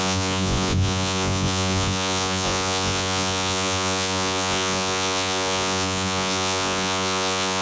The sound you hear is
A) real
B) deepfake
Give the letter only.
B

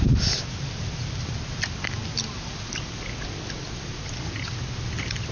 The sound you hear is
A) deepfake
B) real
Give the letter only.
B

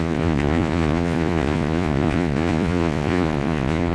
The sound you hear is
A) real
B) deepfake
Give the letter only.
B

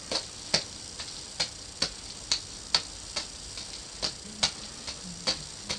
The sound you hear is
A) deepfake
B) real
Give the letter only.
B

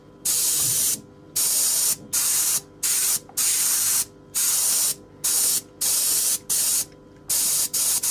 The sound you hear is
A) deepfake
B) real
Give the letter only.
B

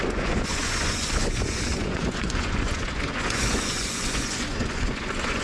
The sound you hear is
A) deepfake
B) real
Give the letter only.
A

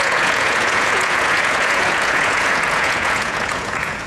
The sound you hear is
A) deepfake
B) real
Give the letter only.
A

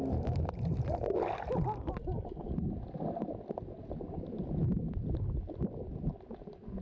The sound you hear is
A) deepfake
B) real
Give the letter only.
B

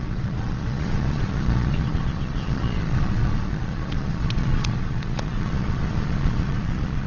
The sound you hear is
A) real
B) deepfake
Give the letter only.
B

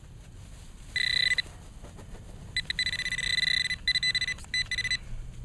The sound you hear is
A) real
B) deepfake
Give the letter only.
A